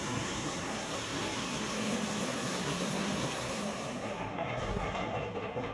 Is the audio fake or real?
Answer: fake